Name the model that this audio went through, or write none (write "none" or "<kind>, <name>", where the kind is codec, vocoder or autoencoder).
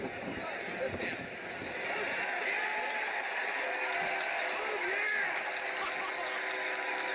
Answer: none